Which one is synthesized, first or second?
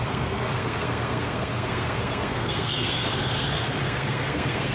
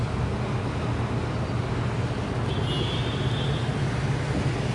first